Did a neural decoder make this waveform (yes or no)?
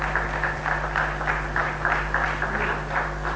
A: no